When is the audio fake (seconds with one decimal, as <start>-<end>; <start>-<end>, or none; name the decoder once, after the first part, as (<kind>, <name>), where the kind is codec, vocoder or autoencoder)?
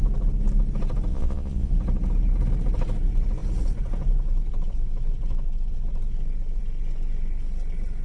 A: 1.1-1.7 (vocoder, Vocos)